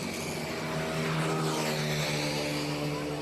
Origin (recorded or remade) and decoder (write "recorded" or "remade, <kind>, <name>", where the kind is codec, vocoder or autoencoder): recorded